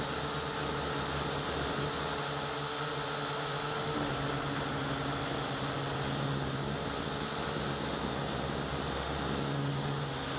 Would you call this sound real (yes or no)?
yes